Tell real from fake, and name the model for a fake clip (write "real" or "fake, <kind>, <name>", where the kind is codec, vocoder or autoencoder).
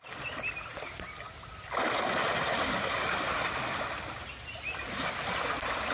real